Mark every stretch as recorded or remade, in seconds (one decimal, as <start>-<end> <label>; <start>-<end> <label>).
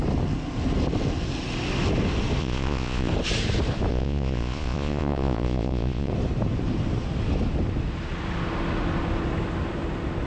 0.0-2.4 recorded; 2.4-3.1 remade; 3.1-3.9 recorded; 3.9-6.1 remade; 6.1-10.3 recorded